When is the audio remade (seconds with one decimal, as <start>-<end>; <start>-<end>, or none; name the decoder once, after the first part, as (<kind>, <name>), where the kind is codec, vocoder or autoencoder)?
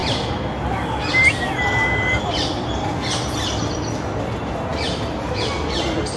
none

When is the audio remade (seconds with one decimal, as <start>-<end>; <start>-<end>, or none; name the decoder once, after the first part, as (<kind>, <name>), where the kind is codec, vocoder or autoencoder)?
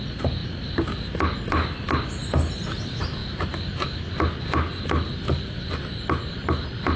none